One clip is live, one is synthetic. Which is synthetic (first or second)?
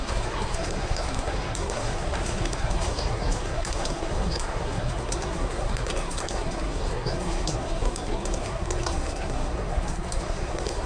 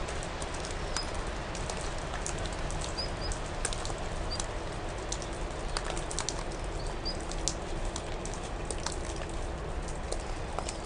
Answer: first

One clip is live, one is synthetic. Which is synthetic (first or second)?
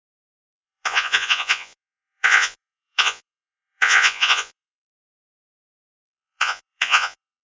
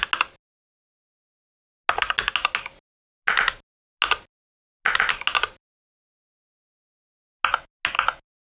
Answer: first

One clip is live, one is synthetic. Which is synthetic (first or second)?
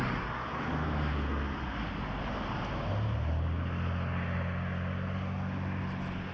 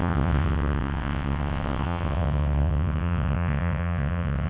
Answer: second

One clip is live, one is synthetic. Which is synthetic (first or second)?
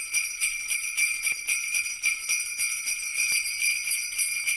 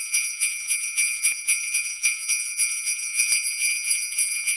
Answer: second